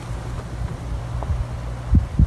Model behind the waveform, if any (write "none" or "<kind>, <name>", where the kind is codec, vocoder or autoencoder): none